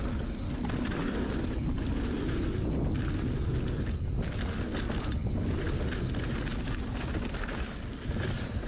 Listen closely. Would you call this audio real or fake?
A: real